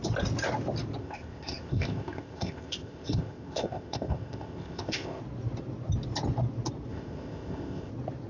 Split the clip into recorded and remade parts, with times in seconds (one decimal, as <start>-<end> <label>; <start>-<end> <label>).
0.0-1.0 recorded; 1.0-5.2 remade; 5.2-6.9 recorded; 6.9-7.9 remade; 7.9-8.3 recorded